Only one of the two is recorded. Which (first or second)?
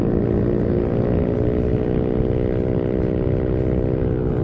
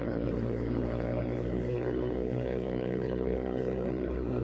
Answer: first